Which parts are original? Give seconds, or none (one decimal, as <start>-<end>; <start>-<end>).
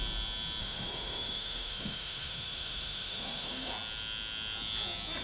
0.0-0.6; 3.7-5.2